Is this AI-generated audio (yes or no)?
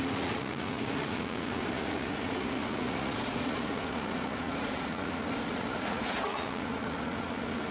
yes